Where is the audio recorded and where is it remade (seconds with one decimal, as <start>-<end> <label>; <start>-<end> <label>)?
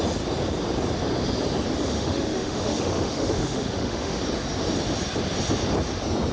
0.0-1.9 recorded; 1.9-4.2 remade; 4.2-6.3 recorded